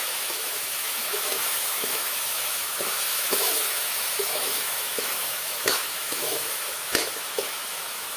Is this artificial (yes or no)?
yes